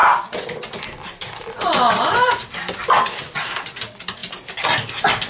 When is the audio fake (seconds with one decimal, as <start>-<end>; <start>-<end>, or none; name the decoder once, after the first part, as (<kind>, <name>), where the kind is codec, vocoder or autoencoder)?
none